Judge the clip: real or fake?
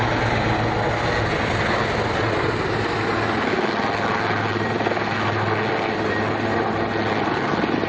real